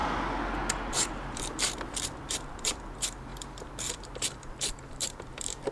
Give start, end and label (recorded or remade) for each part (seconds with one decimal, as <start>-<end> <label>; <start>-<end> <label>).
0.0-0.9 recorded; 0.9-5.7 remade